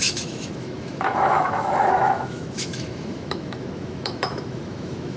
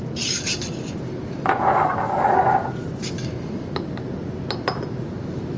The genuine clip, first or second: second